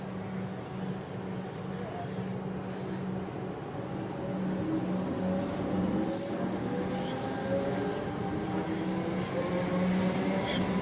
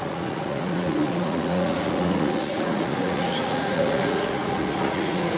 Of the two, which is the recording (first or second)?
first